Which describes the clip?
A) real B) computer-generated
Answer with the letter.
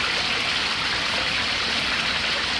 A